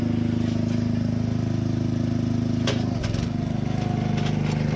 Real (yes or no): yes